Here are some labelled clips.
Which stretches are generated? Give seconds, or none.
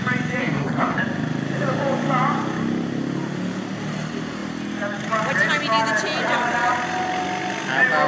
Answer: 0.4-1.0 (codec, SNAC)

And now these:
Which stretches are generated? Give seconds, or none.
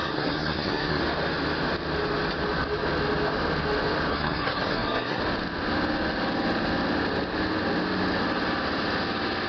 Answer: 0.0-1.0 (codec, SNAC); 4.1-5.2